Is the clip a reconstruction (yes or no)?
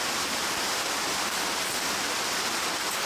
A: no